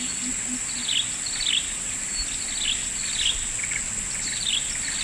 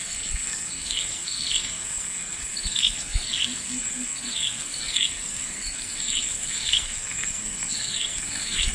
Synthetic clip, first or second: second